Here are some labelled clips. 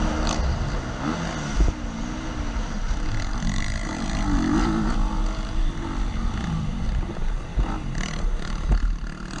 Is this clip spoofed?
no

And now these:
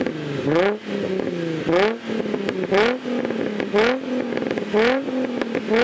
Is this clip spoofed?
no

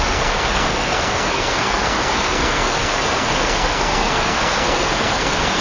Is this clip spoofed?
yes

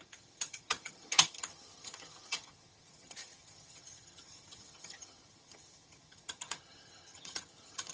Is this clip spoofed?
yes